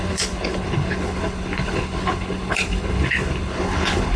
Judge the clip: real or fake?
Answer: fake